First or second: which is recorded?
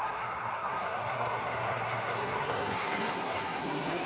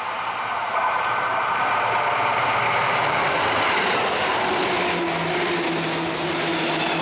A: second